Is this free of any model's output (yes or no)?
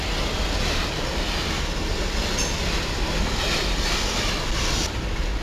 yes